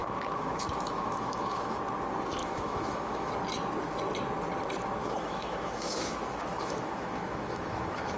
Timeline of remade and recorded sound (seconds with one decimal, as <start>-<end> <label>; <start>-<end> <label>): 0.0-1.8 remade; 1.8-2.4 recorded; 2.4-3.3 remade; 3.3-5.0 recorded; 5.0-8.2 remade